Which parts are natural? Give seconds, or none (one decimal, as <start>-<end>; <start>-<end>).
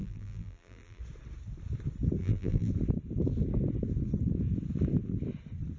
1.0-2.2; 2.7-5.8